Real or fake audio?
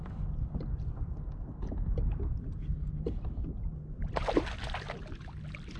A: real